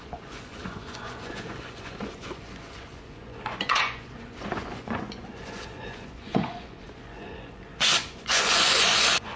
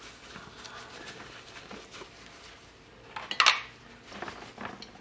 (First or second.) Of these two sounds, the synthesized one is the first